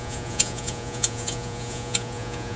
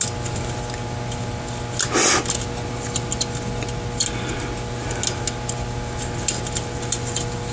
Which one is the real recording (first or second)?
second